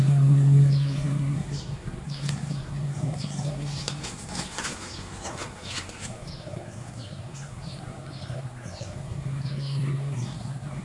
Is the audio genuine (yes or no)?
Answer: no